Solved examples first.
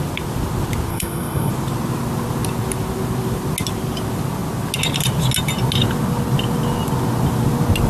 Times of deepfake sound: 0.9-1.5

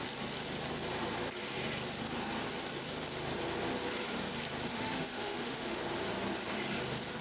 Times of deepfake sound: 4.7-5.8

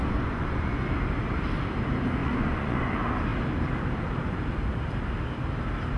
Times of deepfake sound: 0.0-0.8; 2.2-2.9

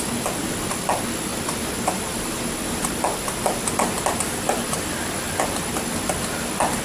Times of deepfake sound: none

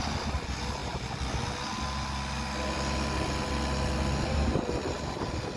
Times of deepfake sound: none

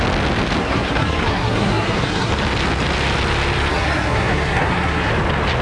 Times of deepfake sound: 0.6-2.3; 3.7-5.1